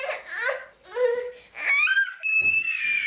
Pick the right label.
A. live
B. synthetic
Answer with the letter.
A